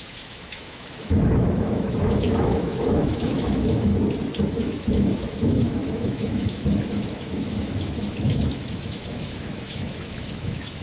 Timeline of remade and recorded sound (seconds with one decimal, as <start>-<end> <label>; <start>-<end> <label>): 0.0-3.9 remade; 3.9-4.6 recorded; 4.6-10.8 remade